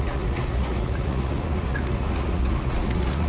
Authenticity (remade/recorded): remade